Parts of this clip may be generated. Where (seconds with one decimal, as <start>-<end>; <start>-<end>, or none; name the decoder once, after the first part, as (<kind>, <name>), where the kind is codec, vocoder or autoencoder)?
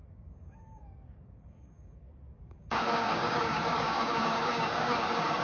0.0-5.4 (codec, DAC)